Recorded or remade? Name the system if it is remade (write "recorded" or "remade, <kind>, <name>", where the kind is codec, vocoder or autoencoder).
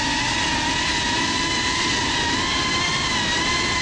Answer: recorded